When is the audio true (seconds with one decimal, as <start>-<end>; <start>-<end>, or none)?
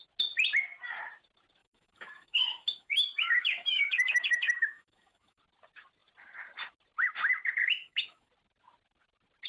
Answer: 0.0-1.6; 5.4-7.6; 8.3-9.5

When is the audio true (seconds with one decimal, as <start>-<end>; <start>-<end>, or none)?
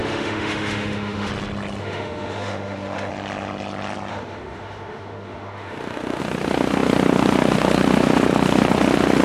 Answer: 1.3-1.8; 3.1-4.1; 6.2-9.2